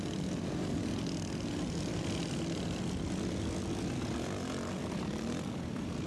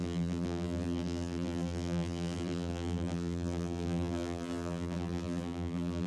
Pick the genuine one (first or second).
first